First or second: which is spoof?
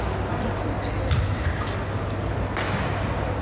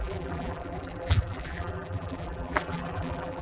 second